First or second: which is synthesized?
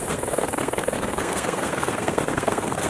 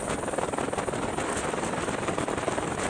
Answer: first